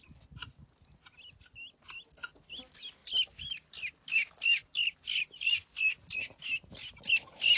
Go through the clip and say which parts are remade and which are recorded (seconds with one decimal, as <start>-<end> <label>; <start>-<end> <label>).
0.0-7.6 recorded